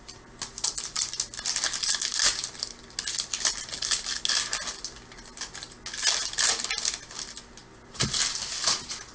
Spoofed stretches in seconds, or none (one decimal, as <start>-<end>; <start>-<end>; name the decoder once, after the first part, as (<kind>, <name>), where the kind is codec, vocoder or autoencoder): none

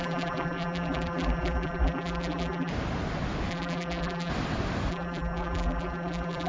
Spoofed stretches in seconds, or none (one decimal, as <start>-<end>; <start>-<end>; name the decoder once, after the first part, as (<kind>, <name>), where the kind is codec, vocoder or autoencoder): 0.0-2.7 (vocoder, BigVGAN v2); 3.5-4.3; 4.9-6.5

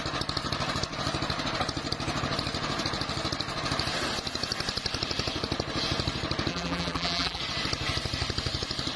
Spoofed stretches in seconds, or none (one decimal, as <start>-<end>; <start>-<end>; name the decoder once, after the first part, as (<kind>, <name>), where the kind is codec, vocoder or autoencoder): 6.5-7.4 (vocoder, BigVGAN v2)

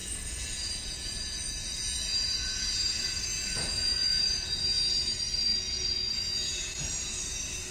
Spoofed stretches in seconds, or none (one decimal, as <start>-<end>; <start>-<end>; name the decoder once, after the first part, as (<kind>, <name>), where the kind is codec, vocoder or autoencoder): 0.0-4.6 (vocoder, Vocos); 5.5-6.8